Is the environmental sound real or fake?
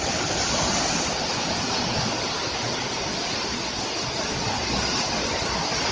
real